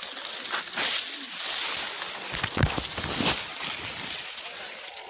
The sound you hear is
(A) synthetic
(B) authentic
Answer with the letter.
B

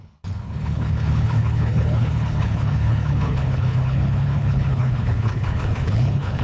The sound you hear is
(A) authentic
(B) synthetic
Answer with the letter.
B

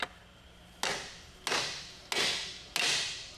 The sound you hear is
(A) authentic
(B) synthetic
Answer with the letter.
A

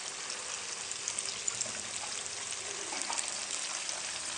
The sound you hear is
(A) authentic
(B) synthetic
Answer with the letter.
A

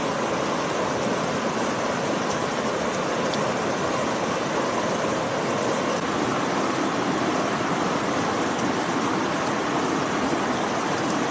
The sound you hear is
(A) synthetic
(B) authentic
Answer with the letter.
B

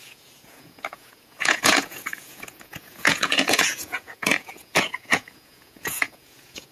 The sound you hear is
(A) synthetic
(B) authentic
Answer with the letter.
A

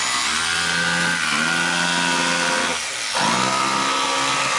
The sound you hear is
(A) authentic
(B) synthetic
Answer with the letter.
A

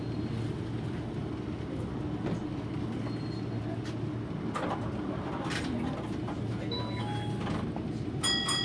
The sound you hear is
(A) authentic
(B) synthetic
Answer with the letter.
A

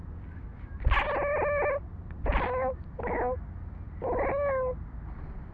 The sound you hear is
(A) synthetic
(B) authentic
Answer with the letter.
B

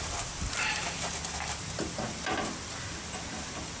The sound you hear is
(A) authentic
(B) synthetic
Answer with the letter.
A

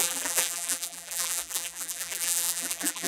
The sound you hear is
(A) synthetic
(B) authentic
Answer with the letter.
A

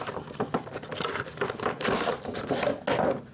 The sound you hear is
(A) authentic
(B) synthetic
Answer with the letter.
A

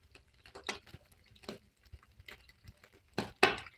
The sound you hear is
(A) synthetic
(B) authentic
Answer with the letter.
B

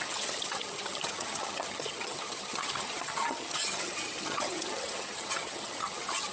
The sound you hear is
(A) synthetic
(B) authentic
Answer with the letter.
A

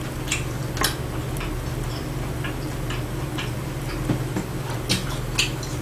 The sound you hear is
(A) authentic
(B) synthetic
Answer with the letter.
A